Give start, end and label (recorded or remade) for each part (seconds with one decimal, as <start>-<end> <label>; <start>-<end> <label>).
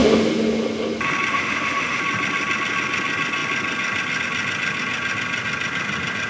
0.0-1.3 recorded; 1.3-2.0 remade; 2.0-6.3 recorded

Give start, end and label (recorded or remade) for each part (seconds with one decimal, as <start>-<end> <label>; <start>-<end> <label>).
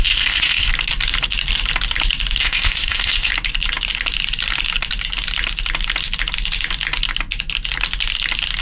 0.0-0.7 remade; 0.7-2.4 recorded; 2.4-3.3 remade; 3.3-8.6 recorded